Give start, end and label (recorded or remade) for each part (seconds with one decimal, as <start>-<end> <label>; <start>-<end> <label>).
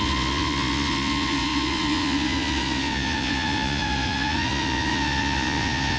0.0-6.0 remade